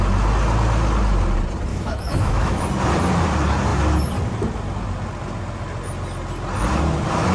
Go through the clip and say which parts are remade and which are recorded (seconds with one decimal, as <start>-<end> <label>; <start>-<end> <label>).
0.0-1.7 recorded; 1.7-2.6 remade; 2.6-7.3 recorded